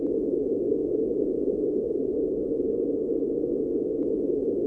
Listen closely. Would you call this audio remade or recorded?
remade